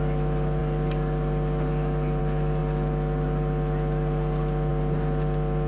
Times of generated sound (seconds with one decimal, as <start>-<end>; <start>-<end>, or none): none